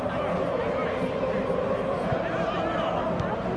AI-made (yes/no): no